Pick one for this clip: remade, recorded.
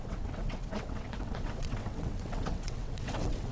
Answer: remade